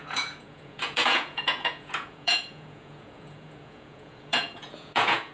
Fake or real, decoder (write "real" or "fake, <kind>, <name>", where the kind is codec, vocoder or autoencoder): fake, vocoder, Vocos